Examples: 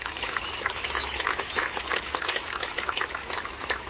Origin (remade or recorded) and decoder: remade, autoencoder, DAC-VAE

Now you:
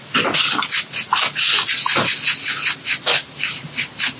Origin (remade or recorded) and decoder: recorded